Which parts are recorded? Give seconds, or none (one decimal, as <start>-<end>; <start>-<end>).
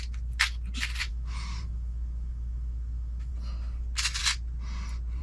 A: 0.0-1.1; 3.3-5.2